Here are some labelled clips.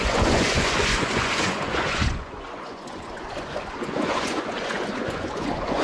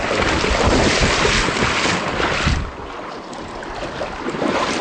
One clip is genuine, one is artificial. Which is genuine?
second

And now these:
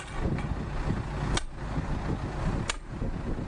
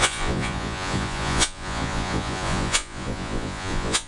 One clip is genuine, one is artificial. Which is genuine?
first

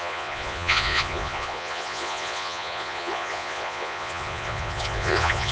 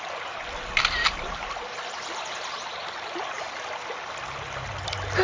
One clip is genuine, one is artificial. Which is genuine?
second